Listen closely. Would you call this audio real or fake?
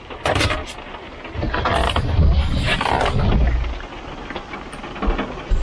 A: real